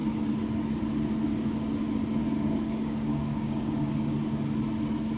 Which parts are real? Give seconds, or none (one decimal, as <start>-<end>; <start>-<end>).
0.0-2.2; 3.9-5.2